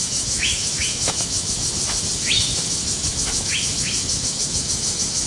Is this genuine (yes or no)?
no